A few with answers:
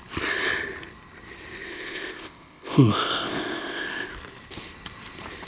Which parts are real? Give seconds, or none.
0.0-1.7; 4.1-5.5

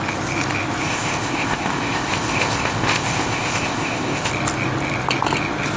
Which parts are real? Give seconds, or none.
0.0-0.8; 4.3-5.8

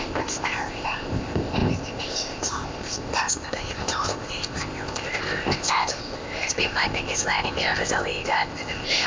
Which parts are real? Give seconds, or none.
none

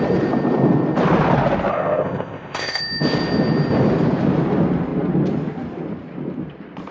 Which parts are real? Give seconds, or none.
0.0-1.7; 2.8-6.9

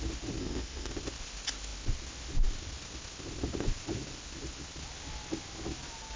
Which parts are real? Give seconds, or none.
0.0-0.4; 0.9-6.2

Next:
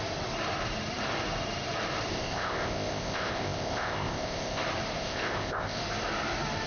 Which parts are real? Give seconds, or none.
0.0-2.1; 4.6-5.0; 5.8-6.7